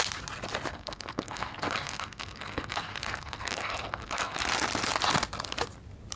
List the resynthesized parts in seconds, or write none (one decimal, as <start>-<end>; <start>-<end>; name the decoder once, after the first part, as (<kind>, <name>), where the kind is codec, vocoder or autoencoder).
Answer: 0.7-4.4 (codec, SNAC)